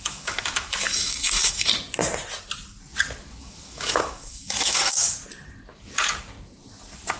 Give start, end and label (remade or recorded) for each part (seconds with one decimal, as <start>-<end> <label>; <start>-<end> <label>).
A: 0.0-1.7 remade; 1.7-3.4 recorded; 3.4-5.2 remade; 5.2-7.2 recorded